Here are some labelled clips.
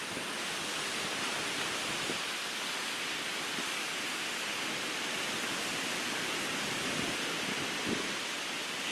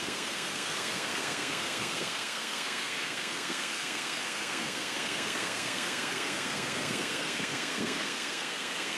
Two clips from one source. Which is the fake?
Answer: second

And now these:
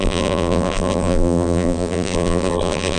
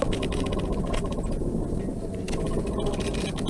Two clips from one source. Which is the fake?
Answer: first